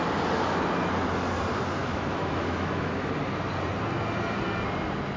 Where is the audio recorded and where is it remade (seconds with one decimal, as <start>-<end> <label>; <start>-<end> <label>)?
0.0-1.8 recorded; 1.8-3.1 remade; 3.1-5.2 recorded